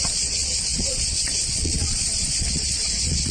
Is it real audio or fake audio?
fake